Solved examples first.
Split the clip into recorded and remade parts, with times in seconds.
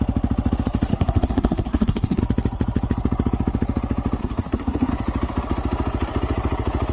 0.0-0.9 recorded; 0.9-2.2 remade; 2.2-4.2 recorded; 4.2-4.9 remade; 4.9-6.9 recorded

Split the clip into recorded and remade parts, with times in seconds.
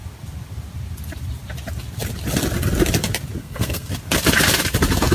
0.0-3.4 recorded; 3.4-3.9 remade; 3.9-5.1 recorded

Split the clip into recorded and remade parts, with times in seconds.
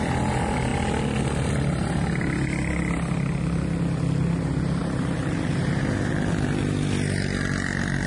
0.0-4.8 recorded; 4.8-6.1 remade; 6.1-8.1 recorded